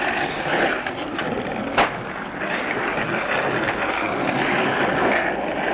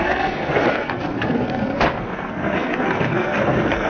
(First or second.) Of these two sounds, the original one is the first